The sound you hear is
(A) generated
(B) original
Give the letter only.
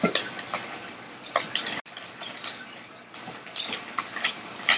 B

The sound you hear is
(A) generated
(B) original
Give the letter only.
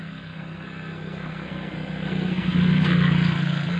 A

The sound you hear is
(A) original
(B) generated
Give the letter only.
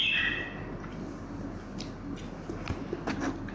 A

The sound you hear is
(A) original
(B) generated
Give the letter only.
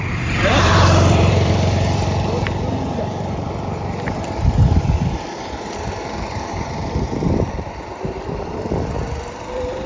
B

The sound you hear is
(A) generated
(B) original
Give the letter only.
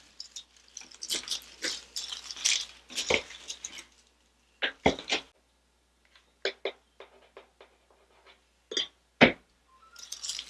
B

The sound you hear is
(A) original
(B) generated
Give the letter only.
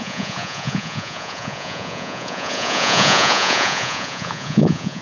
B